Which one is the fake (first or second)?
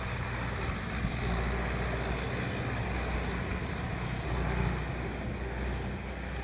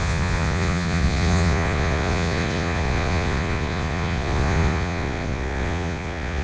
second